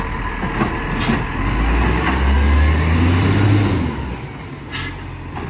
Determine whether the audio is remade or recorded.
recorded